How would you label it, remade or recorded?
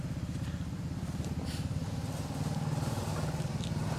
recorded